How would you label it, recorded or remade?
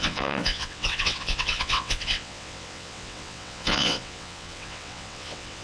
remade